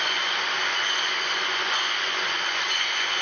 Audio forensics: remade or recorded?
remade